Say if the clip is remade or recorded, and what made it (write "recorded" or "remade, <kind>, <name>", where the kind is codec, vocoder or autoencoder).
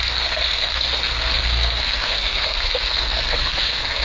remade, codec, SNAC